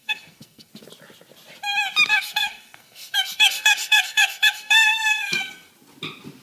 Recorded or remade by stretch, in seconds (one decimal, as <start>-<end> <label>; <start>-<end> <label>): 0.0-0.7 remade; 0.7-2.1 recorded; 2.1-5.7 remade; 5.7-6.4 recorded